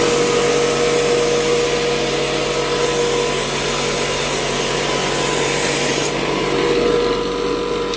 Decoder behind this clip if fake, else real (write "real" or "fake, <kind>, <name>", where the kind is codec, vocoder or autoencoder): real